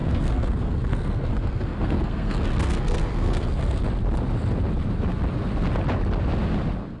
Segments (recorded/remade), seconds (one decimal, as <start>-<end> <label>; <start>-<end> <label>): 0.0-3.8 remade; 3.8-7.0 recorded